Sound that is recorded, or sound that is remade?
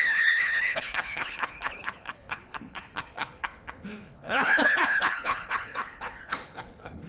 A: remade